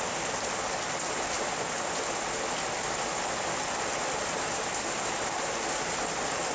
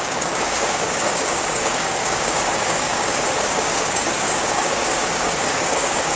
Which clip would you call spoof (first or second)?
second